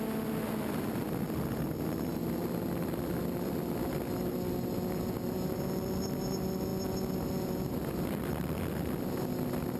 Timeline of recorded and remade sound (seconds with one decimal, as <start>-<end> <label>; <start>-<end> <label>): 0.0-9.8 recorded

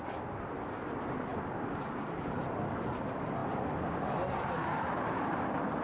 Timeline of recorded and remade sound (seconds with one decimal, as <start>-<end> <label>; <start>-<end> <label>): 0.0-5.8 recorded

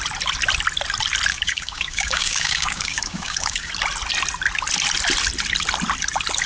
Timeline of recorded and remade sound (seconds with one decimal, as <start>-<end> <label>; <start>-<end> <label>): 0.0-1.3 recorded; 1.3-3.7 remade; 3.7-6.5 recorded

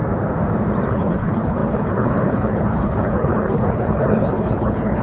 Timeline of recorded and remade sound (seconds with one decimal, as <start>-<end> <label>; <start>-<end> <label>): 0.0-0.9 recorded; 0.9-5.0 remade

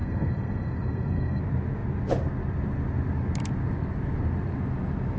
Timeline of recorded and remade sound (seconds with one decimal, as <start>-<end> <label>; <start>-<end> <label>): 0.0-1.4 remade; 1.4-5.2 recorded